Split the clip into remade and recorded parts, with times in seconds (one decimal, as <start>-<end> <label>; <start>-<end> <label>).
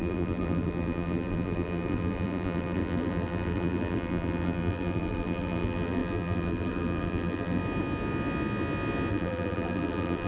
0.0-7.6 remade; 7.6-9.1 recorded; 9.1-10.3 remade